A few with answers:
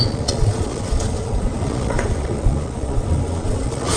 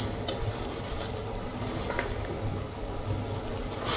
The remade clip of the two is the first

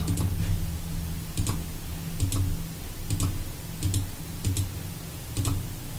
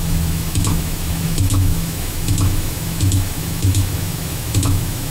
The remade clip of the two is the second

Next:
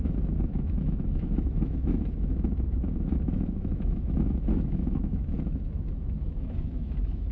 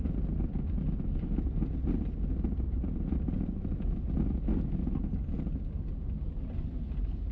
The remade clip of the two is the first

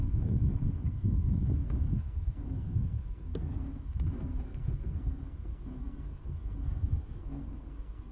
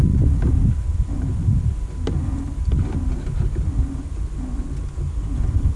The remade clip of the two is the first